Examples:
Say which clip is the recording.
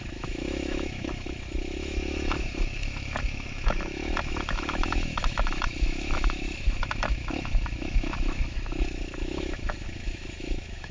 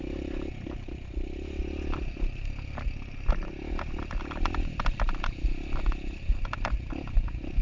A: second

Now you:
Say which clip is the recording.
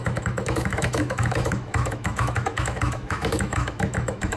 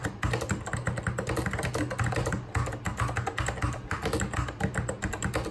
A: second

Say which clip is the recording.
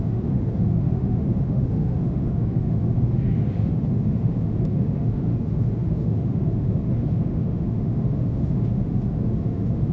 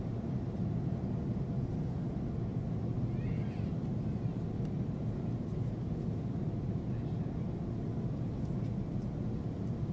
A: second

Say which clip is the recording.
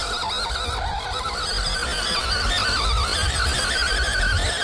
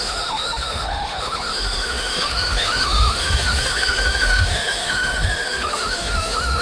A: first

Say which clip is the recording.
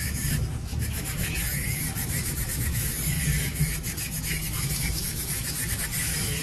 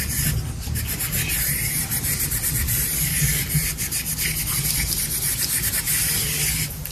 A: second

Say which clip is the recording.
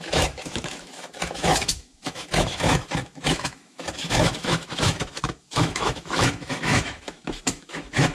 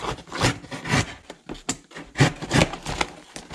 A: second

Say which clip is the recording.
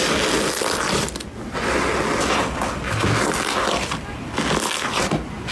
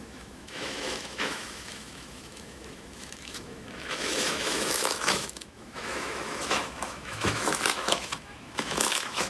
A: first